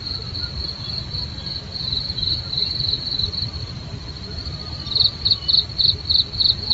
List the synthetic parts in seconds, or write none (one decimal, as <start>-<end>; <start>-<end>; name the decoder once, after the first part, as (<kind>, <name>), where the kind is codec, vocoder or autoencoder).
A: none